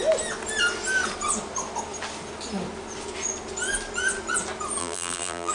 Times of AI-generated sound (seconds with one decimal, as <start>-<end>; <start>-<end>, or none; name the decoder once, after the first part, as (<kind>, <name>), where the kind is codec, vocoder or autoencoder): 4.8-5.5 (vocoder, BigVGAN v2)